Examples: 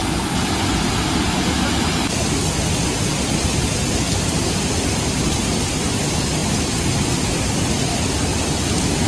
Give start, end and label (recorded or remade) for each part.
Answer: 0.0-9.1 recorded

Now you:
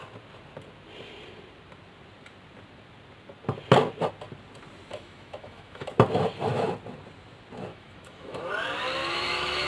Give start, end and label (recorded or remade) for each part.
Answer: 0.0-4.9 recorded; 4.9-5.9 remade; 5.9-7.7 recorded; 7.7-8.5 remade; 8.5-9.0 recorded; 9.0-9.7 remade

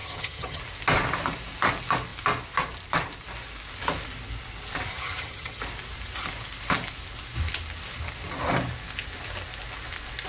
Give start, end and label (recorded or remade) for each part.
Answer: 0.0-0.6 remade; 0.6-4.9 recorded; 4.9-5.6 remade; 5.6-10.3 recorded

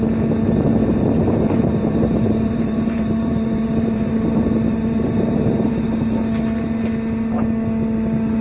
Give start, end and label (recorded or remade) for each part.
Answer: 0.0-0.8 recorded; 0.8-5.7 remade; 5.7-8.4 recorded

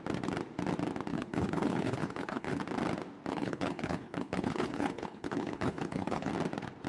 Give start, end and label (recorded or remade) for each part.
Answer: 0.0-1.1 recorded; 1.1-2.6 remade; 2.6-3.3 recorded; 3.3-6.3 remade; 6.3-6.9 recorded

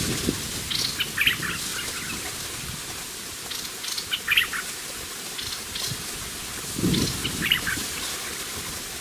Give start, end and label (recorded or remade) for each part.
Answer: 0.0-7.2 recorded; 7.2-8.0 remade; 8.0-9.0 recorded

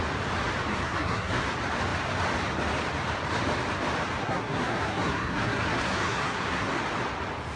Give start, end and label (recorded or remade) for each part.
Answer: 0.0-0.7 recorded; 0.7-1.4 remade; 1.4-4.2 recorded; 4.2-6.7 remade; 6.7-7.6 recorded

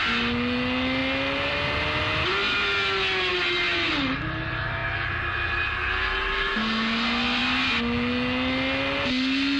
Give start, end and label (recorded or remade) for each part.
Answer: 0.0-9.6 recorded